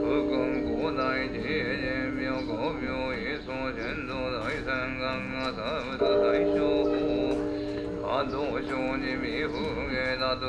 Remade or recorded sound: recorded